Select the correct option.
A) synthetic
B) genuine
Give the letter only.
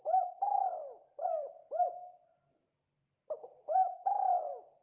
A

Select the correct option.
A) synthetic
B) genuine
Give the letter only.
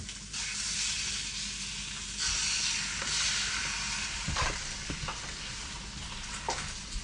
B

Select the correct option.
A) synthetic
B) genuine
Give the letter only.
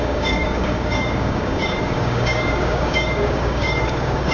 A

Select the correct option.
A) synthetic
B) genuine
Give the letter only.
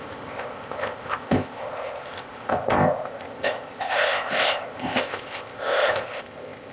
A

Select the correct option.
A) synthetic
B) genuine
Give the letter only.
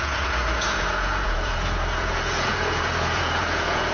A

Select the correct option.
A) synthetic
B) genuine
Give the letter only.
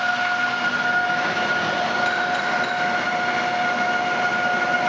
B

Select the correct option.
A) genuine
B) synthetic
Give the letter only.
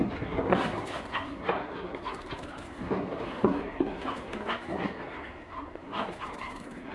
B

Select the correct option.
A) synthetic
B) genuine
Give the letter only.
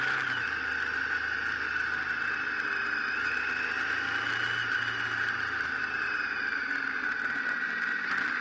B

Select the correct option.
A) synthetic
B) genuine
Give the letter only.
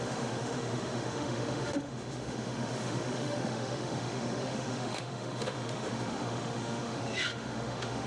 A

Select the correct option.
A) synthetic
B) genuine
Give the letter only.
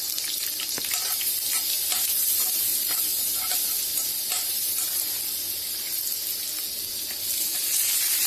B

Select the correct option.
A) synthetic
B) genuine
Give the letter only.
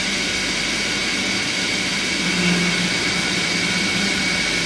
B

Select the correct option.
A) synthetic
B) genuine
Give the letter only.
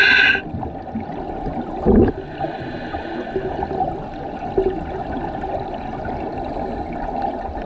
B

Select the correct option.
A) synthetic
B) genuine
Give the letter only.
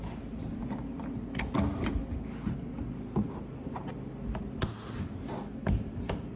B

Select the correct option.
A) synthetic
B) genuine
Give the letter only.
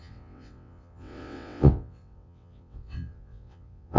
A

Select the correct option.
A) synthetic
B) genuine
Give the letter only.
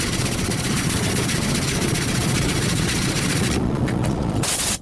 A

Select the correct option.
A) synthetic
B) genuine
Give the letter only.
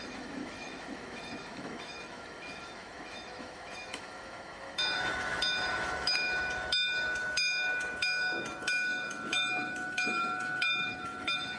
A